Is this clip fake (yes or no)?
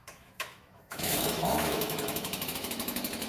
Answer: yes